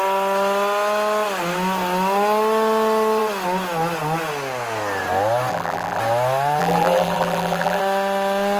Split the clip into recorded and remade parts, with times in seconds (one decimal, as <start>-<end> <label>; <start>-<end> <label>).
0.0-5.5 recorded; 5.5-6.0 remade; 6.0-6.6 recorded; 6.6-7.8 remade; 7.8-8.6 recorded